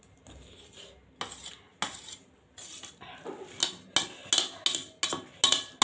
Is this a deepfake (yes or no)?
no